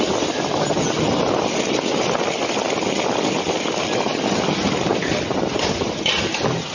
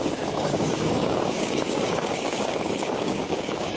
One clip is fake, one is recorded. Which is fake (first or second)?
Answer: second